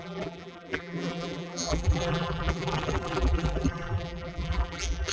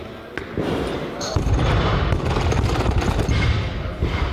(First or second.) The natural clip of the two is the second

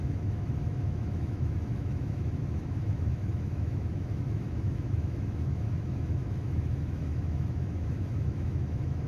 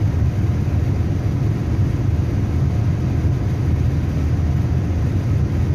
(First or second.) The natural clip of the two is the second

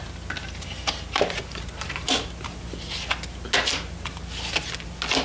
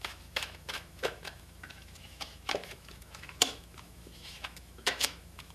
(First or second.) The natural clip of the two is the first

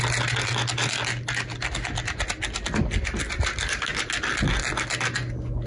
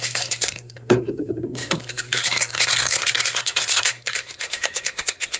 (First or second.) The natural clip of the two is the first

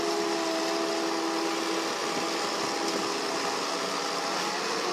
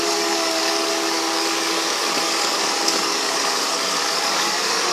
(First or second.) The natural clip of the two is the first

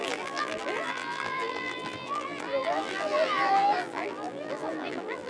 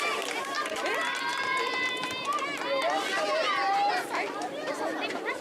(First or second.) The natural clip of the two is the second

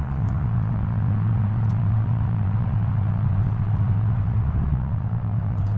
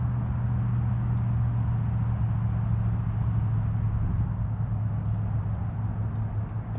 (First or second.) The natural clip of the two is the second